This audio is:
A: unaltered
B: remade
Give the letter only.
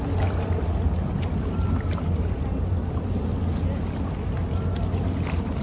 A